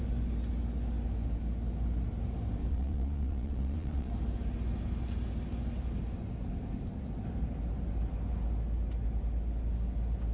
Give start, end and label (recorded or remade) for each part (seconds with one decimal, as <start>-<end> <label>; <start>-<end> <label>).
0.0-2.7 recorded; 2.7-4.1 remade; 4.1-10.3 recorded